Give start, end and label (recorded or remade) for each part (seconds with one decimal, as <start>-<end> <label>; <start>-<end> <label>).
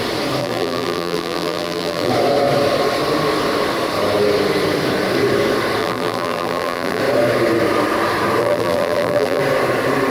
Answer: 0.0-0.4 recorded; 0.4-2.1 remade; 2.1-5.8 recorded; 5.8-7.0 remade; 7.0-8.4 recorded; 8.4-9.4 remade; 9.4-10.1 recorded